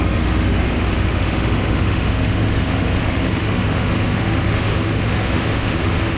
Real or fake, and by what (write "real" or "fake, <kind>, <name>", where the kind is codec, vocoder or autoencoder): fake, autoencoder, DAC-VAE